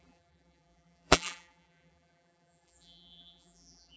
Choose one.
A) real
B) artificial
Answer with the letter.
B